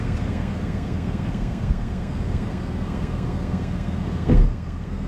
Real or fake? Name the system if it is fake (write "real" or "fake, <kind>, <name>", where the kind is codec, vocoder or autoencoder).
fake, codec, SNAC